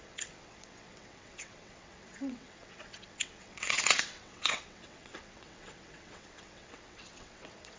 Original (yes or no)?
no